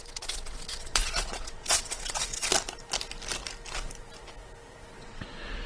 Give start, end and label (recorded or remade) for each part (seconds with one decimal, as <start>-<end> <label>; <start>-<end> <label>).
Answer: 0.0-2.5 remade; 2.5-5.0 recorded; 5.0-5.7 remade